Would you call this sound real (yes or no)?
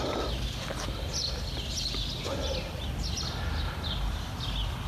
yes